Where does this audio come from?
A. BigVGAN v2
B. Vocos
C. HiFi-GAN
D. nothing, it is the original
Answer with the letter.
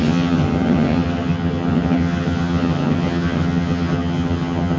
C